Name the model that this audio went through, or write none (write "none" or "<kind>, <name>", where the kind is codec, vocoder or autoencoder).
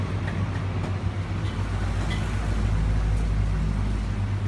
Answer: none